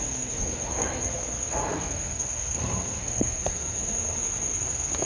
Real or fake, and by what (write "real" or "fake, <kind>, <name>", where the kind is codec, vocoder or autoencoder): fake, codec, SNAC